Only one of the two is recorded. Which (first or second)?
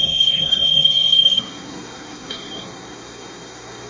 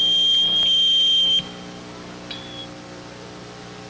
second